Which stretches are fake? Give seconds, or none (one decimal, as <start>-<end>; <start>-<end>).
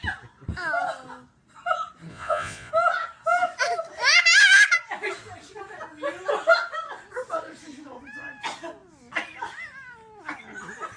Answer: 2.1-2.7